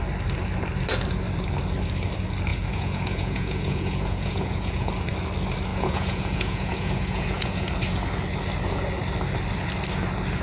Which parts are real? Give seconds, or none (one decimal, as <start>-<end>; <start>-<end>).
0.0-2.5; 4.9-5.7; 7.7-10.4